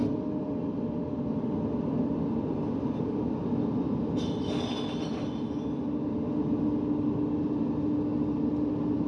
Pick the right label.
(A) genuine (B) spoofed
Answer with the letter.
A